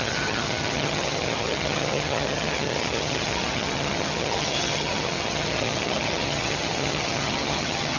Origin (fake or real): fake